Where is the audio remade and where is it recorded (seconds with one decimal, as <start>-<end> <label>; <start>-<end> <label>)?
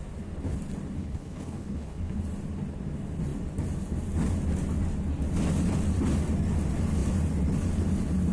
0.0-1.0 recorded; 1.0-2.2 remade; 2.2-8.3 recorded